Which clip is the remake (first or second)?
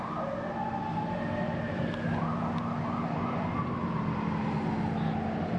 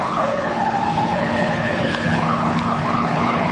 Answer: second